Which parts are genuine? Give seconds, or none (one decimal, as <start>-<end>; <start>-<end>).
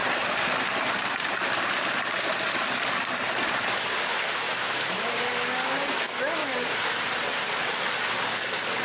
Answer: 5.2-6.4; 7.8-8.8